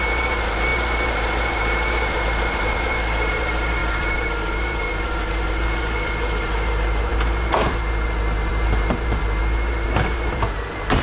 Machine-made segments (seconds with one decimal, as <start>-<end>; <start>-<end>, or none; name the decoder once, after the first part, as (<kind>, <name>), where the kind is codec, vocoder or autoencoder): 0.0-11.0 (vocoder, BigVGAN v2)